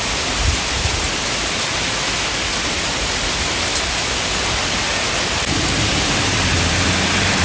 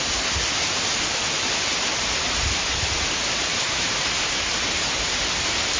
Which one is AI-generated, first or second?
second